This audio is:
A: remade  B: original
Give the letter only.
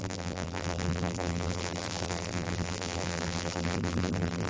A